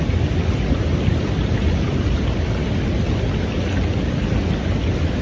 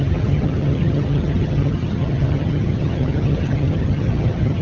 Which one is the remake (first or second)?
second